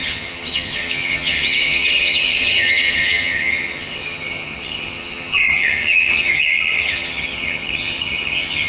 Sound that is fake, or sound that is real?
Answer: fake